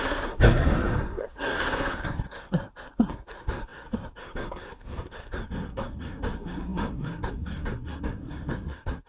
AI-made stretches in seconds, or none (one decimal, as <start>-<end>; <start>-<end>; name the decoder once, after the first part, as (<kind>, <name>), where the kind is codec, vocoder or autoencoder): 0.0-9.1 (codec, SNAC)

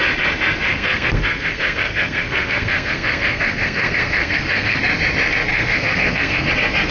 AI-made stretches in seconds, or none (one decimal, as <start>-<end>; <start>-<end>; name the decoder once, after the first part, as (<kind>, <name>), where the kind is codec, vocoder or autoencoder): 0.7-4.8 (codec, SNAC); 5.5-6.5

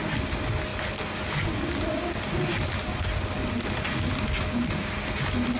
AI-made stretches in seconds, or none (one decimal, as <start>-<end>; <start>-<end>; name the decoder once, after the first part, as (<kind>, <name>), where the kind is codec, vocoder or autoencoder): none

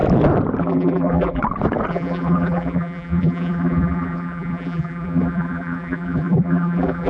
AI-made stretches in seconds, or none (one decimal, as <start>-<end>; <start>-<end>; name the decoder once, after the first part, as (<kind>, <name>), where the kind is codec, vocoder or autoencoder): 0.6-1.4 (vocoder, BigVGAN v2); 1.9-7.1

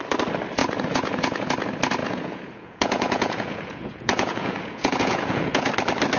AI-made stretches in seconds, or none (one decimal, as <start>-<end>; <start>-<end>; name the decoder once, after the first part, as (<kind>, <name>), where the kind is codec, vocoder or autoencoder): 0.6-1.5 (vocoder, Vocos); 2.0-5.7

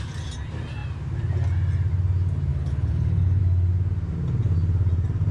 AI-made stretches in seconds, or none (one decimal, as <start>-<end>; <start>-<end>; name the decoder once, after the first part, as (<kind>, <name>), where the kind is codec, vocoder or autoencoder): 2.5-3.4 (codec, HILCodec)